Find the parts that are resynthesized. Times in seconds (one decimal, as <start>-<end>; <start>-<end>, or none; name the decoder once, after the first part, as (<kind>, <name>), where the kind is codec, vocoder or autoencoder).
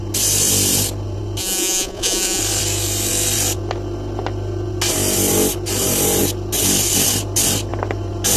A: 1.4-2.4 (vocoder, Vocos)